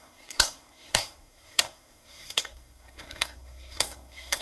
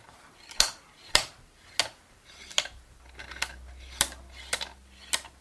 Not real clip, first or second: first